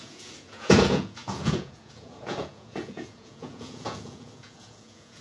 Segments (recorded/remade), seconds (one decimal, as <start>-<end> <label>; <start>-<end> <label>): 0.0-5.2 remade